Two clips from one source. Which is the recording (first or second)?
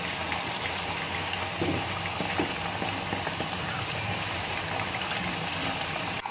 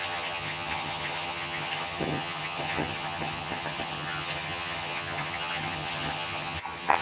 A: first